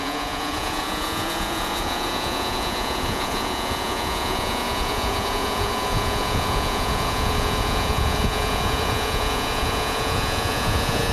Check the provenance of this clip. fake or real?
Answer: fake